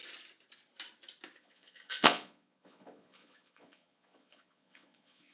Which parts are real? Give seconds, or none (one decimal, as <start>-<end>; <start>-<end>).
0.0-1.4